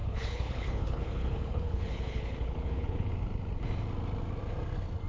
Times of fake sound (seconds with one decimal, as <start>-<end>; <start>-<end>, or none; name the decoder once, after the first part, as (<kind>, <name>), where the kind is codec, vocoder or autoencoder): 0.0-3.1 (codec, HILCodec)